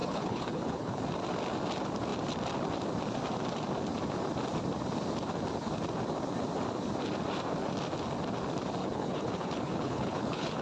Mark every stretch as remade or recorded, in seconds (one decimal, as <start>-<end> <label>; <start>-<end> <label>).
0.0-1.0 remade; 1.0-8.8 recorded; 8.8-10.6 remade